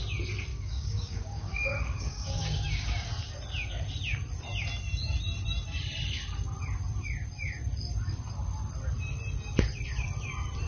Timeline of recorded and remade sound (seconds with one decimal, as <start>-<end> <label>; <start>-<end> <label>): 0.0-0.5 recorded; 0.5-3.1 remade; 3.1-10.7 recorded